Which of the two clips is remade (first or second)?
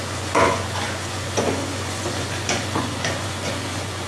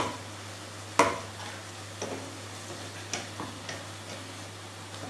first